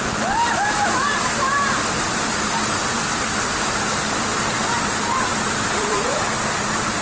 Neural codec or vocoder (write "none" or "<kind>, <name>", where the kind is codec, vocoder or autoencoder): none